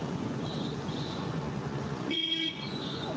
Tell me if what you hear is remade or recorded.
remade